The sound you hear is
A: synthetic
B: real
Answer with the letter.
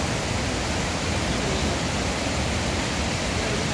B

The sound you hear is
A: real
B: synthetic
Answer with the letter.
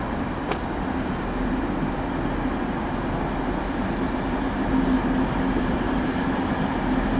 A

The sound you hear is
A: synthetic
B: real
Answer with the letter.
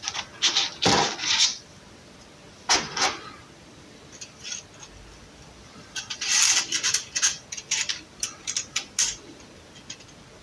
B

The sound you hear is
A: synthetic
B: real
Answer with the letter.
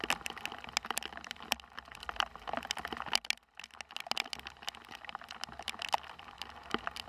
B